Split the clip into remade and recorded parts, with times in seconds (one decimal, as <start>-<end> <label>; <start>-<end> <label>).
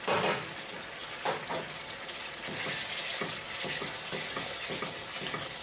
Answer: 0.0-5.6 recorded